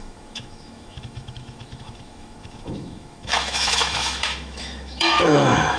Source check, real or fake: fake